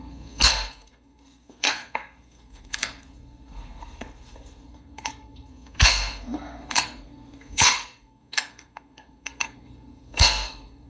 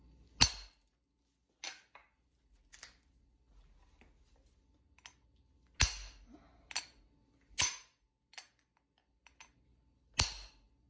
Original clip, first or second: second